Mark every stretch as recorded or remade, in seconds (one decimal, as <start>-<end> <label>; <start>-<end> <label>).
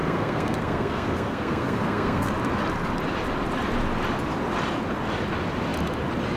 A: 0.0-2.3 remade; 2.3-6.4 recorded